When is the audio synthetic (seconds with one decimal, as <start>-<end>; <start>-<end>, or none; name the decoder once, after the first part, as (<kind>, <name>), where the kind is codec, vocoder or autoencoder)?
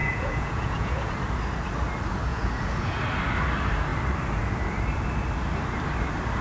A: 0.0-1.1 (vocoder, Vocos); 2.3-3.0